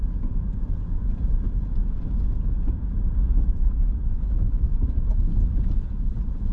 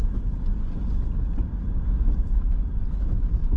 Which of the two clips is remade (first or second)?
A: first